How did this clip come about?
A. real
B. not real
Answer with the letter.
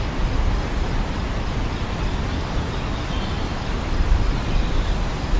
A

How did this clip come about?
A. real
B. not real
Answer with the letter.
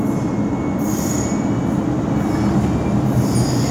A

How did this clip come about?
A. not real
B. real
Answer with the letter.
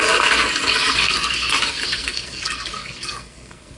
A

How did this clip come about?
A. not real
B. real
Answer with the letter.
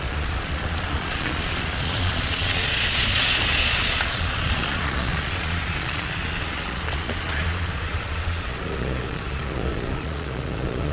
A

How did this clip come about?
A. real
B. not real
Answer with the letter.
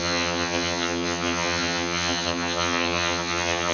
B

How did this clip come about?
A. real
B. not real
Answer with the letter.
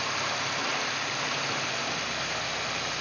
A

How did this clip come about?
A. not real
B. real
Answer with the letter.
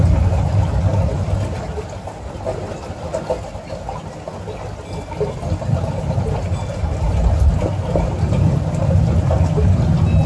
B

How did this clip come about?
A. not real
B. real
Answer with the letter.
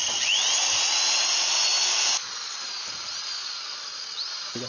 A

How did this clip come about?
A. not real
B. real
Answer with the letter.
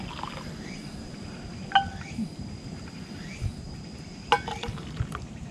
B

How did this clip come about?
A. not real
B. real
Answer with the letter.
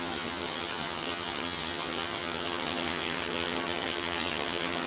A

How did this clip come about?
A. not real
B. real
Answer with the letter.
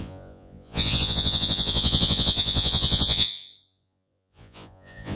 A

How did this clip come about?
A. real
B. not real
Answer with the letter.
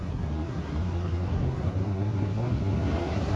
B